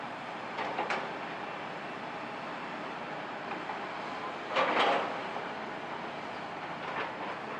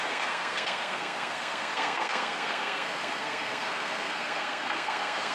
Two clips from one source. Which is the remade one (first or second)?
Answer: second